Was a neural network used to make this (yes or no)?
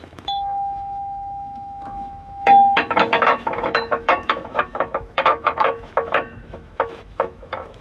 yes